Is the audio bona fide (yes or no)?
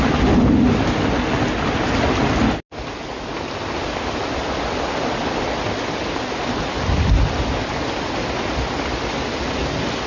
yes